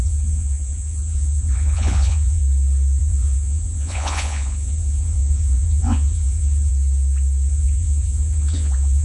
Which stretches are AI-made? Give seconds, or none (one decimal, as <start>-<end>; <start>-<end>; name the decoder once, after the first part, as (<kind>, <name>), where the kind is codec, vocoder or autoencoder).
0.0-2.4 (vocoder, Vocos); 3.0-6.7; 7.5-9.0